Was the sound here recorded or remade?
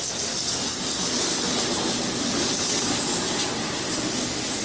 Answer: recorded